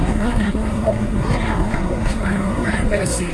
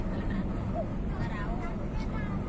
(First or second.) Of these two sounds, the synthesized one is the first